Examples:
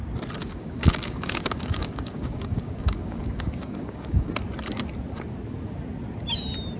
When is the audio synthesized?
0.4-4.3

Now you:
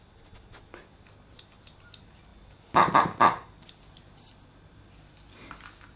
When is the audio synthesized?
none

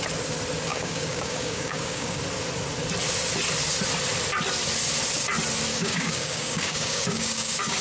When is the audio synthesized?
0.7-2.2; 5.7-7.8

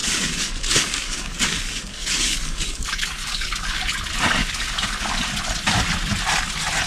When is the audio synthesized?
0.0-3.9; 4.4-5.1

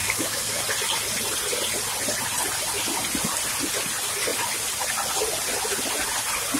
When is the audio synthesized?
0.0-0.6

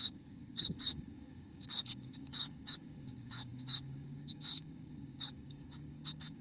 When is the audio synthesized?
0.0-6.4

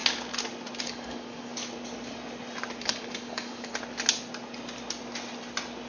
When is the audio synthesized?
0.8-1.5; 2.8-3.7

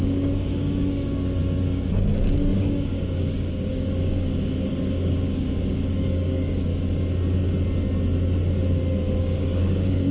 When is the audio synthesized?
0.0-6.7; 9.2-10.1